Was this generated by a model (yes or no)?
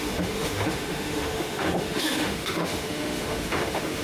yes